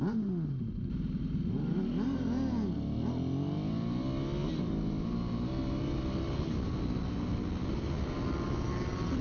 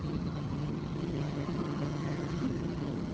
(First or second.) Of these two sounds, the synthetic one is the second